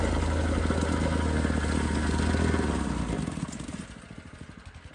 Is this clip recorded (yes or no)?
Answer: yes